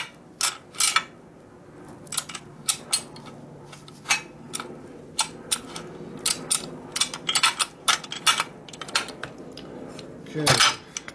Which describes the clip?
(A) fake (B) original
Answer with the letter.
B